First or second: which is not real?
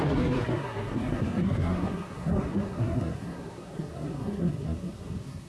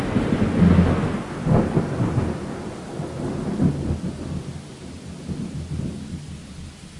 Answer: first